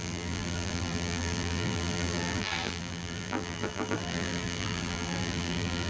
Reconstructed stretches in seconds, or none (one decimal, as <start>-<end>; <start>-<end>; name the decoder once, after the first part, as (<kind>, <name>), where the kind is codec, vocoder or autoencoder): 0.0-5.9 (vocoder, BigVGAN v2)